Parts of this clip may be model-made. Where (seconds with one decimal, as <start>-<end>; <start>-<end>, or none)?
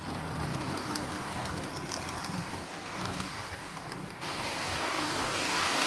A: 0.5-1.7; 2.4-5.9